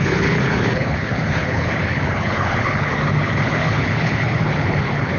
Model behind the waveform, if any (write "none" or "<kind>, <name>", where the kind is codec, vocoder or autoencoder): codec, HILCodec